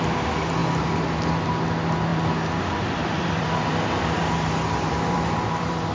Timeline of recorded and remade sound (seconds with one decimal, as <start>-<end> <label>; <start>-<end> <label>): 0.0-2.1 recorded; 2.1-5.9 remade